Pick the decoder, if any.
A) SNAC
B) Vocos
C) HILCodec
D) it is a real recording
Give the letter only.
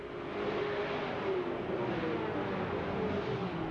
D